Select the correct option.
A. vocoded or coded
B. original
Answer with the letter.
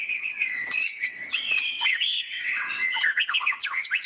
A